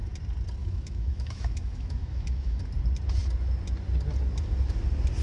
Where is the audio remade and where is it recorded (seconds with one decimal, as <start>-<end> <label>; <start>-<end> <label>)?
0.0-0.6 recorded; 0.6-2.6 remade; 2.6-5.2 recorded